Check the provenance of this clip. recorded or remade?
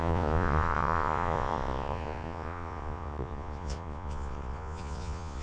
remade